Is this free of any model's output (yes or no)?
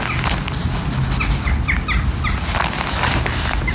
yes